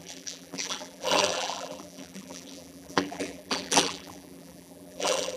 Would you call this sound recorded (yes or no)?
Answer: no